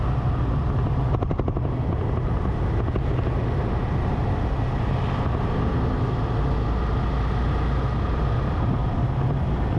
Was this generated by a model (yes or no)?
no